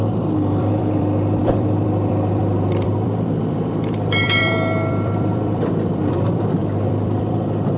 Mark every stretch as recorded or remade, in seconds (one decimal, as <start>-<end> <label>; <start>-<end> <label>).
0.0-7.8 remade